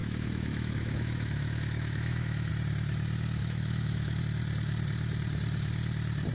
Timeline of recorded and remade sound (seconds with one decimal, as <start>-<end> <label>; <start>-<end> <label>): 0.0-2.5 remade; 2.5-3.4 recorded; 3.4-4.2 remade; 4.2-6.3 recorded